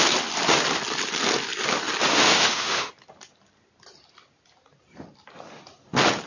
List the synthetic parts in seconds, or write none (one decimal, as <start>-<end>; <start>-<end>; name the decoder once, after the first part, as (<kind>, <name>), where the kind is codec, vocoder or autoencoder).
2.1-2.9 (autoencoder, DAC-VAE)